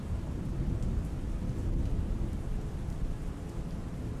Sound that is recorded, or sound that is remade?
recorded